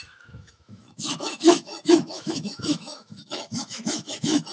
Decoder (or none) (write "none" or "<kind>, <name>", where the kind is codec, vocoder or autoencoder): autoencoder, DAC-VAE